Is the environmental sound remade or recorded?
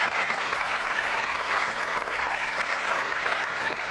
remade